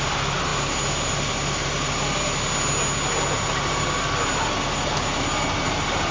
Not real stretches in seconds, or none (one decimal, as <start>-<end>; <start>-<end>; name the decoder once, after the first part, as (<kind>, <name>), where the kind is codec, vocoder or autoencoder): none